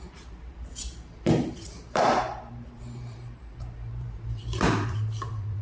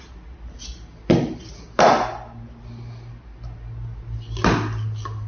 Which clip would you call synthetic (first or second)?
first